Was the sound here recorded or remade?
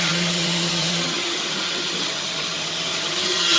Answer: remade